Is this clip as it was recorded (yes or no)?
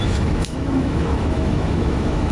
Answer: no